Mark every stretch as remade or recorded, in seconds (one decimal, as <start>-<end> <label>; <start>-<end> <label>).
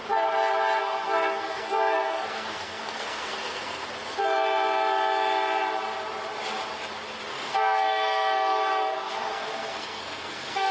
0.0-0.8 recorded; 0.8-3.8 remade; 3.8-7.3 recorded; 7.3-10.7 remade